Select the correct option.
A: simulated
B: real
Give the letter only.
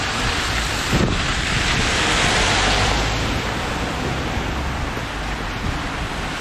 B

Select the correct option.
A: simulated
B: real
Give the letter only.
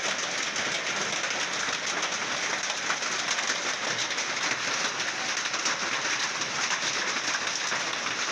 B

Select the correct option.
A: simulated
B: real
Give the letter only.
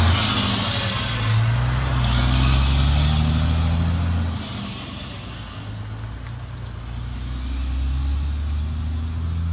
B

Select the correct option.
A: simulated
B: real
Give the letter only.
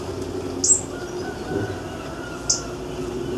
B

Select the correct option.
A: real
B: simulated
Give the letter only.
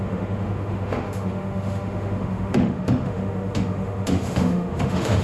B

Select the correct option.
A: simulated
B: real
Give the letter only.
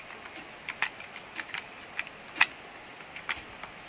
B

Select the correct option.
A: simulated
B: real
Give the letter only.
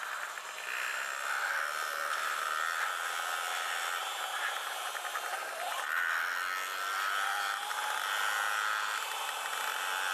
B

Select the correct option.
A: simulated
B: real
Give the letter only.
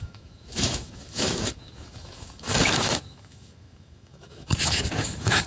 A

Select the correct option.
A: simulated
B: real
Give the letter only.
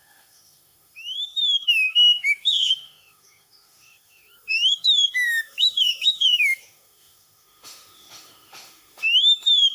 A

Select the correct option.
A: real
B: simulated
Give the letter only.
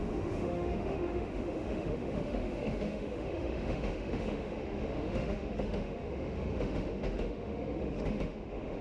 B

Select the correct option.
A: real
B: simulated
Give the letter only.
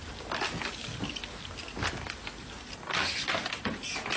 A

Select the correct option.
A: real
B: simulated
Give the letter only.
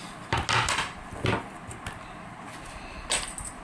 A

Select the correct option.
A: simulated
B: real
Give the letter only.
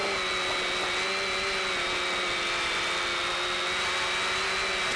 B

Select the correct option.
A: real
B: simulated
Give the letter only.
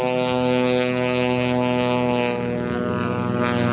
A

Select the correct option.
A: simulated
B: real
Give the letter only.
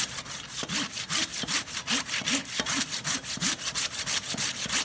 B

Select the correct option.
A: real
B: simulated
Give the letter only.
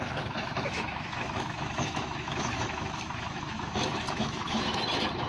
B